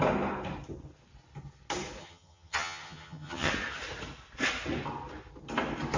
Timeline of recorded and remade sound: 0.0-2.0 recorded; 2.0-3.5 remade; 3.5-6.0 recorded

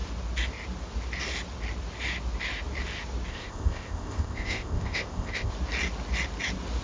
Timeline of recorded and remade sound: 0.0-3.3 recorded; 3.3-5.5 remade; 5.5-6.8 recorded

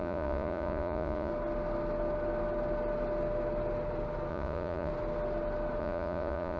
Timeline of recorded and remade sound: 0.0-1.3 remade; 1.3-4.3 recorded; 4.3-4.9 remade; 4.9-5.8 recorded; 5.8-6.6 remade